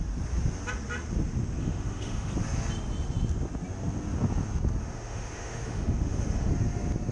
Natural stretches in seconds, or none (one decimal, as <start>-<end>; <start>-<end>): 0.0-1.6; 2.3-4.8; 6.5-7.1